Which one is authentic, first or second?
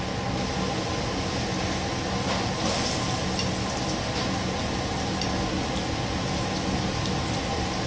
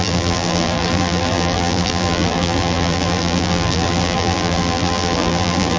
first